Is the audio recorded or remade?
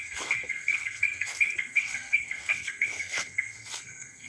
remade